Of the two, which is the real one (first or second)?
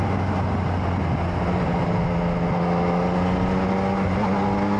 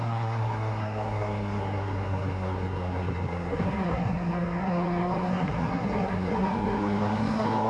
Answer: first